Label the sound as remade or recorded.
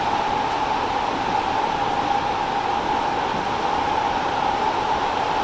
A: recorded